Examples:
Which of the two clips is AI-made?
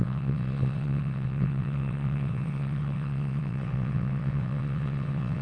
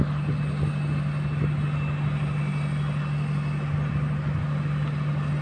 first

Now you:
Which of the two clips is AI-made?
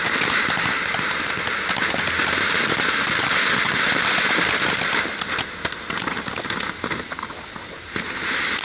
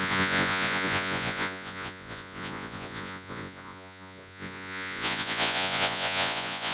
second